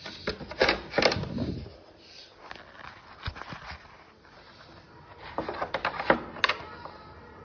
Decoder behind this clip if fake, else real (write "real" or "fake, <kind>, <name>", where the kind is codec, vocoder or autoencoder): real